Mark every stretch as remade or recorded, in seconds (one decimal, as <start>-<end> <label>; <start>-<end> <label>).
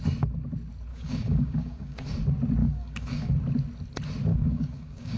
0.0-0.9 recorded; 0.9-2.1 remade; 2.1-2.6 recorded; 2.6-3.3 remade; 3.3-4.3 recorded; 4.3-5.2 remade